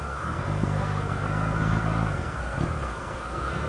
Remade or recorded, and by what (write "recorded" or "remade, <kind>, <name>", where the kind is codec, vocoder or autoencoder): remade, codec, SNAC